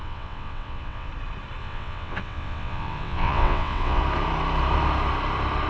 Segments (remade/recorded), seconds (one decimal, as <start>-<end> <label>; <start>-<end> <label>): 0.0-1.1 remade; 1.1-1.6 recorded; 1.6-4.0 remade; 4.0-5.7 recorded